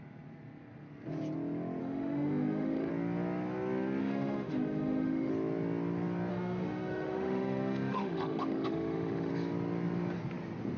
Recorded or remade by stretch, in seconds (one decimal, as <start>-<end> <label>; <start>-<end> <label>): 0.0-1.8 recorded; 1.8-2.9 remade; 2.9-4.0 recorded; 4.0-5.3 remade; 5.3-6.3 recorded; 6.3-9.3 remade; 9.3-10.8 recorded